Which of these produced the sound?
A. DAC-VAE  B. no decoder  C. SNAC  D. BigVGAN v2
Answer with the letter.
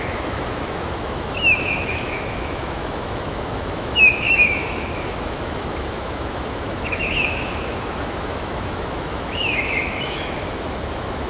A